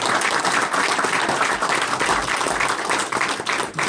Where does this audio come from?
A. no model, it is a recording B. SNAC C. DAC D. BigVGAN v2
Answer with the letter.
A